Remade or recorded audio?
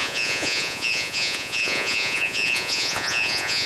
remade